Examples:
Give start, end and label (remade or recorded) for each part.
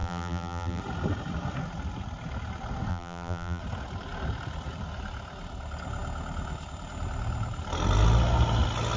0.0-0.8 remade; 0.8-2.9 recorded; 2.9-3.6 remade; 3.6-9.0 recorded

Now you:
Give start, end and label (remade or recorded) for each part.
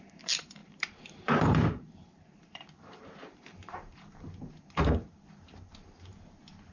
0.0-6.7 remade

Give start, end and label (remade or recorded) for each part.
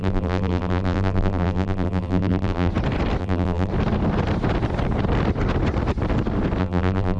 0.0-2.7 remade; 2.7-3.2 recorded; 3.2-3.7 remade; 3.7-6.6 recorded; 6.6-7.2 remade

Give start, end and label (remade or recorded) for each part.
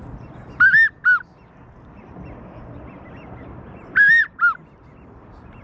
0.0-3.0 recorded; 3.0-5.6 remade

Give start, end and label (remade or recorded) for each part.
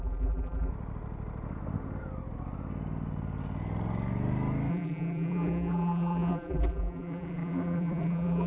0.0-0.7 remade; 0.7-4.7 recorded; 4.7-8.5 remade